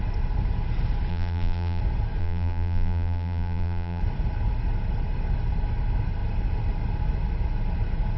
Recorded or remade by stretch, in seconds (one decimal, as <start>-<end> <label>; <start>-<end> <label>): 0.0-1.1 recorded; 1.1-1.8 remade; 1.8-2.2 recorded; 2.2-4.0 remade; 4.0-8.2 recorded